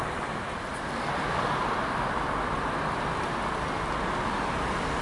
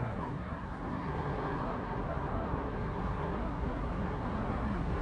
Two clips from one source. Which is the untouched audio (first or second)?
first